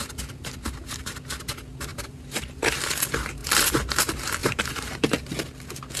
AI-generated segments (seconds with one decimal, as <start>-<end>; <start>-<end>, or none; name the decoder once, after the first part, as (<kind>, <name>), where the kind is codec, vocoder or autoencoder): 1.9-2.6 (vocoder, BigVGAN v2); 3.4-4.0; 4.4-5.2